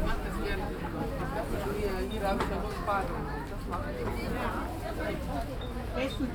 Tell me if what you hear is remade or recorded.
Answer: recorded